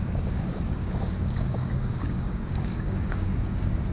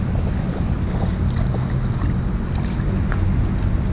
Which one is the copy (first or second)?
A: first